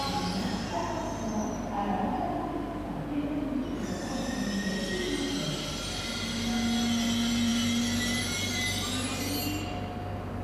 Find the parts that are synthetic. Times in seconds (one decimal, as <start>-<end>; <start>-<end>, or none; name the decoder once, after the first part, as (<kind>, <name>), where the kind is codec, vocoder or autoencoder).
none